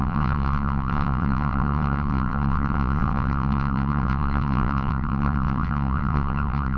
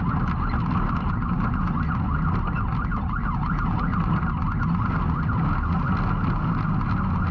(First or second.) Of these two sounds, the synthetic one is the first